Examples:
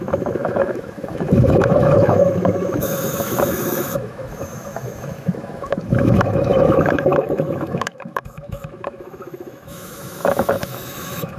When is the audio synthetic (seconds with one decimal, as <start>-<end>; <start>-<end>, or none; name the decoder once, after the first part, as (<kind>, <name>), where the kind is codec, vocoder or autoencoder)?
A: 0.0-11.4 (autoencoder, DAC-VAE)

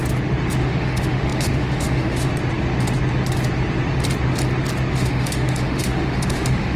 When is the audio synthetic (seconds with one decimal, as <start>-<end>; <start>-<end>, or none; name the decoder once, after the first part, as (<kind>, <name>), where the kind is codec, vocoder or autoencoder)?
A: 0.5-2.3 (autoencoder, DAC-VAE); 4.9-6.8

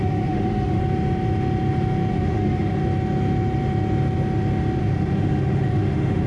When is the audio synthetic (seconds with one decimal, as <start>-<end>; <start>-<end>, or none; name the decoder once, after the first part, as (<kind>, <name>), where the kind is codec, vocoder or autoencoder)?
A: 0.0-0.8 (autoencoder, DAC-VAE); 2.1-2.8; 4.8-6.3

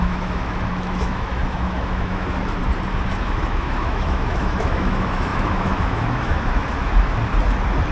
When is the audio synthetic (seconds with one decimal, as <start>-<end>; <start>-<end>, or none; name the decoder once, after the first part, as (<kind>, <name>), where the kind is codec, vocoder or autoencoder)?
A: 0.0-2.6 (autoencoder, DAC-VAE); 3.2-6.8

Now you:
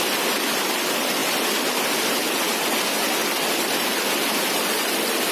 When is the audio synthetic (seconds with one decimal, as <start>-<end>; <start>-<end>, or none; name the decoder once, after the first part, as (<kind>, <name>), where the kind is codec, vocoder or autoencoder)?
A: none